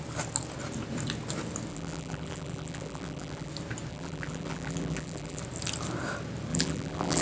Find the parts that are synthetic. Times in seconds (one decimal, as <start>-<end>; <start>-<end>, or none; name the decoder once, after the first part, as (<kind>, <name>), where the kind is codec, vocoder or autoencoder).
1.7-3.5 (vocoder, BigVGAN v2); 3.9-5.4; 6.5-7.2